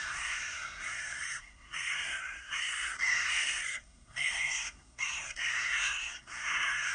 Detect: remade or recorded remade